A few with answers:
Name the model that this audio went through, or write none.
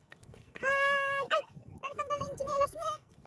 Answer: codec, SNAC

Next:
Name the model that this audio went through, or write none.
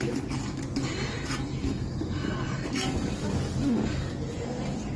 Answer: none